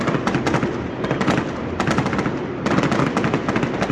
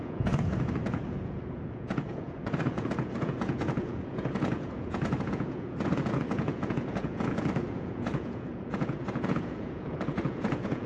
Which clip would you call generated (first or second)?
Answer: second